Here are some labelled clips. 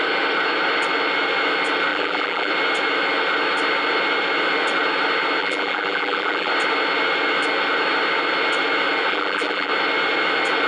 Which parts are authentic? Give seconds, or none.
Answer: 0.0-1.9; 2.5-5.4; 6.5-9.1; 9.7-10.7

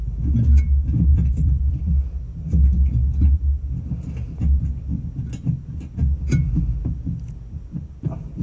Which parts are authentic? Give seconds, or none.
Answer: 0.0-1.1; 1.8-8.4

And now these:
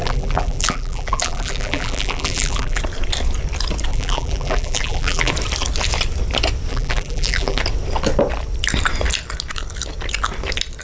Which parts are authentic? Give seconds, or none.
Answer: 2.8-3.9; 5.3-6.7; 7.6-10.8

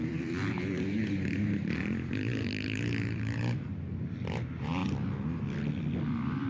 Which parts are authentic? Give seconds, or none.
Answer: 4.8-6.5